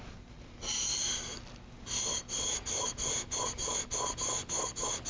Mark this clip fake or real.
real